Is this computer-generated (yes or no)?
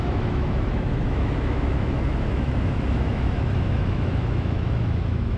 yes